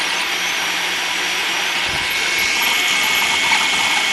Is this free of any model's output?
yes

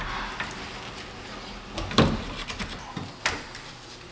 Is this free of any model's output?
yes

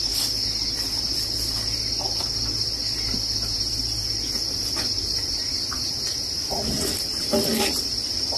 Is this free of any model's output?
yes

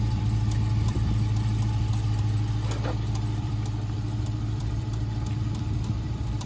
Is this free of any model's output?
no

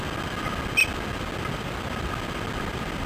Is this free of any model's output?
yes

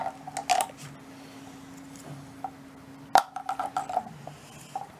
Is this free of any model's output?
yes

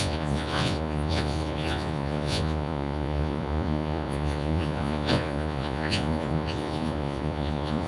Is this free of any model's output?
no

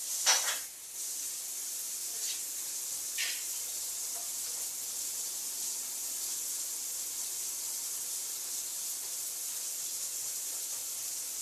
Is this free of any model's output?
yes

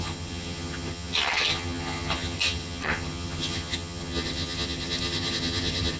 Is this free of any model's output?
no